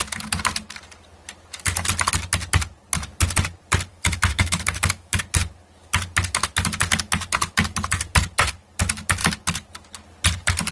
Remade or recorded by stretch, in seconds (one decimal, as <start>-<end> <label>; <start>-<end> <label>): 0.0-3.9 recorded; 3.9-5.2 remade; 5.2-10.7 recorded